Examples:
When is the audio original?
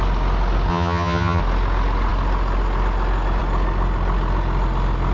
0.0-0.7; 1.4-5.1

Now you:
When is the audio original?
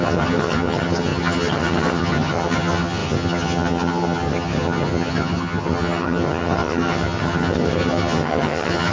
none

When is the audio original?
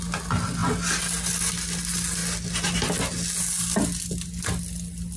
0.0-5.2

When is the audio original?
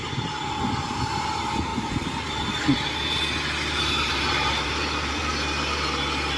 1.7-3.9; 5.2-6.4